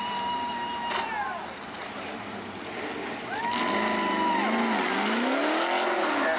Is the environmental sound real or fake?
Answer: real